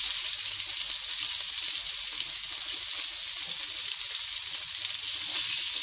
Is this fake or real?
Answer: real